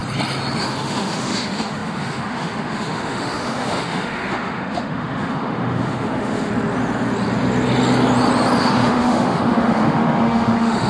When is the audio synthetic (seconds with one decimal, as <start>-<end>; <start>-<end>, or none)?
0.6-6.5; 8.6-10.9